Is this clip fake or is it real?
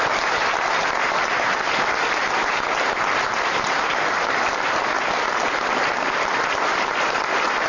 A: real